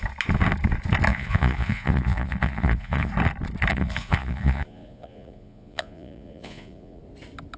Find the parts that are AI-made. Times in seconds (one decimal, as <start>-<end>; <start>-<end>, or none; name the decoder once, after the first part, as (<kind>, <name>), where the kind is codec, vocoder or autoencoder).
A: 1.1-3.1 (vocoder, Vocos); 3.7-7.0